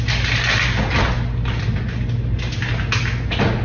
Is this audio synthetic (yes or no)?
no